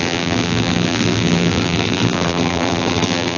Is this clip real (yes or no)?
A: no